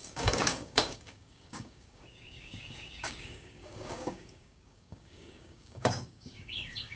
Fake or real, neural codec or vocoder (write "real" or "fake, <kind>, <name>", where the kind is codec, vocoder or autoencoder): fake, codec, DAC